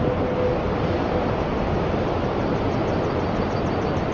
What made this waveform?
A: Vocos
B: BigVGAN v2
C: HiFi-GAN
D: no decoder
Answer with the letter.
D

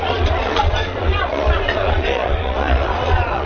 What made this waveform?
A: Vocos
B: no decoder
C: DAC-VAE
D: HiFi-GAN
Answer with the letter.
A